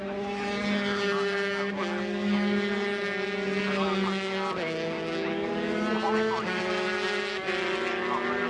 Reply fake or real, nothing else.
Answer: real